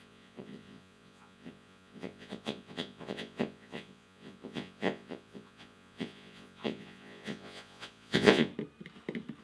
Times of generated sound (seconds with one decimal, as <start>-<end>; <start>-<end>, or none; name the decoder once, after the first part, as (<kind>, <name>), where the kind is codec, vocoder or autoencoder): 0.0-8.5 (vocoder, Vocos)